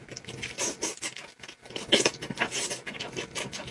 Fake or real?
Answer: real